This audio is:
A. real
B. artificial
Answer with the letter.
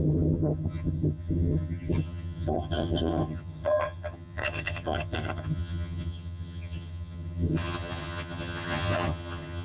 B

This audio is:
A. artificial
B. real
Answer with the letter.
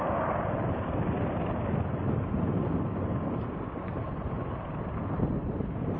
B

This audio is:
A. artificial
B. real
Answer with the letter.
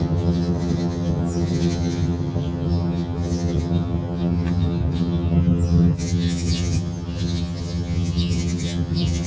A